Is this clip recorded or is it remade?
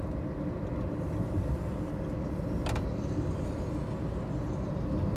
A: recorded